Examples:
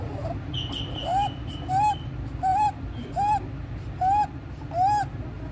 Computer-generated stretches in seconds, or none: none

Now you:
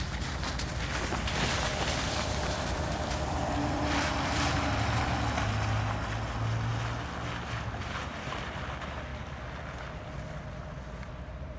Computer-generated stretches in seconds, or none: 1.7-4.5

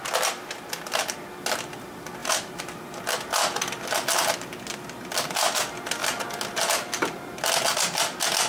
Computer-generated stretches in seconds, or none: 2.2-3.0

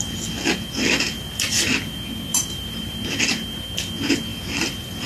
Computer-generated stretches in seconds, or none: 2.3-3.1; 4.3-5.1